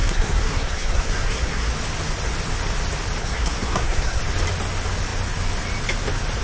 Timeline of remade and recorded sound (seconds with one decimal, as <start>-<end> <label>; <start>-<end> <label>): 0.0-1.7 remade; 1.7-3.2 recorded; 3.2-4.2 remade; 4.2-6.4 recorded